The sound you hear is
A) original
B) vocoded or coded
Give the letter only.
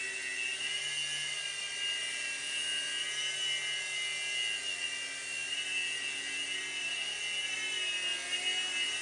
A